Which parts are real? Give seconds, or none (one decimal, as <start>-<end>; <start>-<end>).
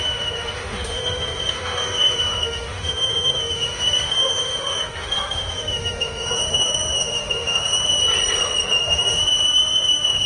8.0-8.8